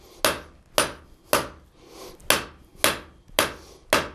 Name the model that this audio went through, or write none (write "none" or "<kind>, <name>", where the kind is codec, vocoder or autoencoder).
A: none